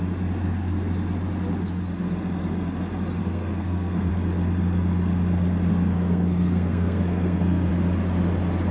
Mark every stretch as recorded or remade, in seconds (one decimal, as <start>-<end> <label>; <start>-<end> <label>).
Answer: 0.0-3.2 recorded; 3.2-4.1 remade; 4.1-5.7 recorded; 5.7-7.7 remade; 7.7-8.7 recorded